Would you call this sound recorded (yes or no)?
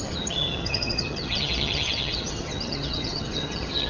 no